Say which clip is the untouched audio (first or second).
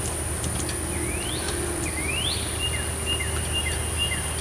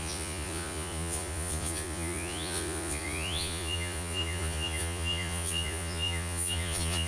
first